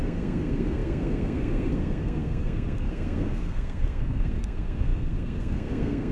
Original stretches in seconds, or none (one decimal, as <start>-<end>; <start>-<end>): none